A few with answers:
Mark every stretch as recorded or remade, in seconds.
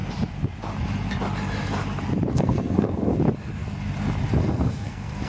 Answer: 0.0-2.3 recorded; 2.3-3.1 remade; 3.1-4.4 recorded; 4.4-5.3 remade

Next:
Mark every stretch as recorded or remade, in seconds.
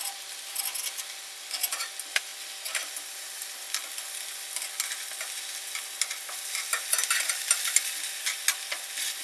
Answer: 0.0-9.2 recorded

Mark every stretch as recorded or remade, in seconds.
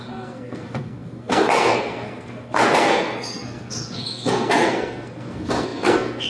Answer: 0.0-6.3 remade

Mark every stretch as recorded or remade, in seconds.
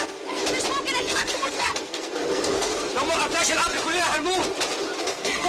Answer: 0.0-0.4 remade; 0.4-1.0 recorded; 1.0-2.9 remade; 2.9-5.0 recorded; 5.0-5.5 remade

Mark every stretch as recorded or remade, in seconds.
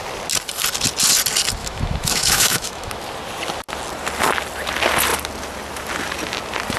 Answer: 0.0-1.6 recorded; 1.6-3.0 remade; 3.0-6.8 recorded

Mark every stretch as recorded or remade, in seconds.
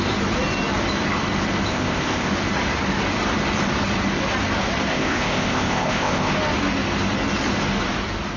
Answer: 0.0-1.7 recorded; 1.7-2.3 remade; 2.3-4.9 recorded; 4.9-6.3 remade; 6.3-8.4 recorded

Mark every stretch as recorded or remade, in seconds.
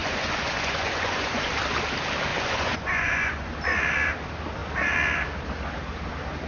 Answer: 0.0-1.5 remade; 1.5-2.3 recorded; 2.3-3.5 remade; 3.5-6.5 recorded